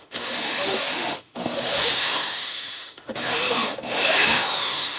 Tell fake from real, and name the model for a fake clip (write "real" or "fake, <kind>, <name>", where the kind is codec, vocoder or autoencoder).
fake, autoencoder, DAC-VAE